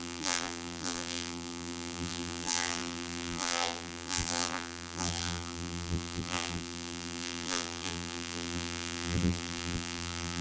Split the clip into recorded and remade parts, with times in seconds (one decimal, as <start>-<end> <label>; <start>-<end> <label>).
0.0-10.4 remade